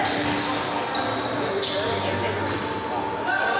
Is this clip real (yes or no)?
yes